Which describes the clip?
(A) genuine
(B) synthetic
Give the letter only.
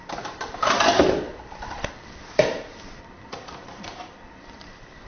B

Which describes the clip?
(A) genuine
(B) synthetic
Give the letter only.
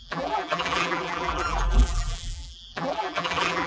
B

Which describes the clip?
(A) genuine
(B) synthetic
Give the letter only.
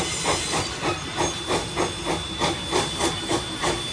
A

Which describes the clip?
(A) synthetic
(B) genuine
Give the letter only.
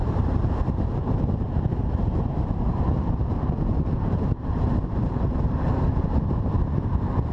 A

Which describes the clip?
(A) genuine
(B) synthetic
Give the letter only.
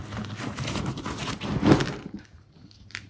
B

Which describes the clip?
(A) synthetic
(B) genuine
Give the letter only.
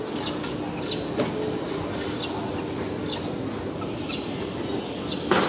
B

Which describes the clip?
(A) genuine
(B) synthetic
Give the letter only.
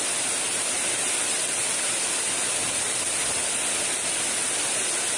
A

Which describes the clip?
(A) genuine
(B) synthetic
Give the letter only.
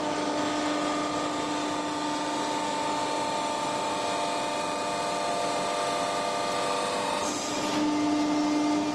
A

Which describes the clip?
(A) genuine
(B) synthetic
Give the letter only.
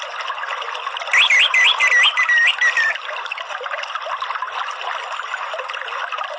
A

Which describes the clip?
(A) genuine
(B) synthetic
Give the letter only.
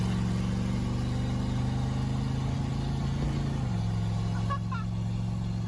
A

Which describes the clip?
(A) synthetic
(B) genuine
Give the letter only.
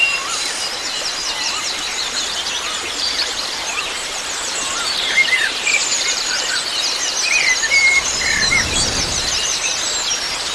A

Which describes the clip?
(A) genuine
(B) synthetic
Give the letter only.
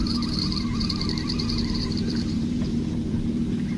B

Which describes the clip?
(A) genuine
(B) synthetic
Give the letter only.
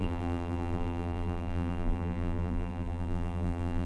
B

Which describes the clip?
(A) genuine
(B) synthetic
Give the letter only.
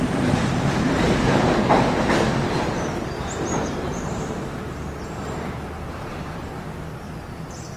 B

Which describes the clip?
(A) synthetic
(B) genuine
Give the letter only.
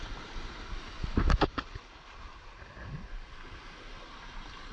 B